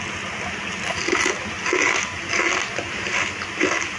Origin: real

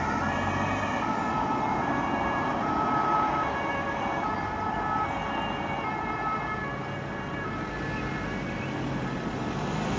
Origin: real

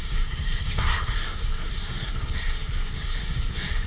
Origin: fake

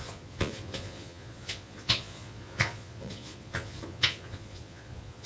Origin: fake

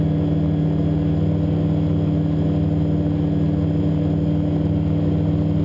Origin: real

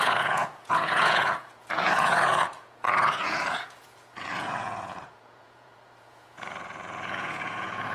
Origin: fake